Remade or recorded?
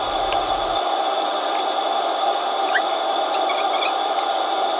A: recorded